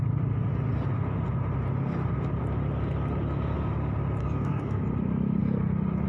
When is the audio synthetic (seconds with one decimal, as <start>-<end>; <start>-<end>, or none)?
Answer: 4.2-4.8